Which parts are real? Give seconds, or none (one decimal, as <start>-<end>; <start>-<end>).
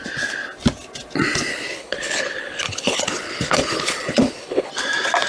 0.0-1.5; 4.7-5.3